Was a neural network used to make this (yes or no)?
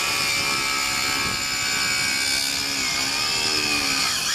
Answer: no